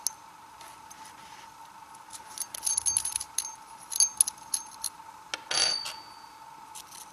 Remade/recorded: recorded